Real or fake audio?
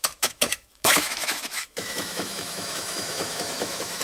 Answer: fake